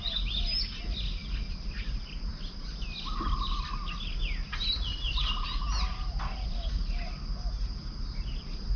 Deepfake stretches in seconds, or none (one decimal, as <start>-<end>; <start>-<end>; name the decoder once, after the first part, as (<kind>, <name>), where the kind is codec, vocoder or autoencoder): none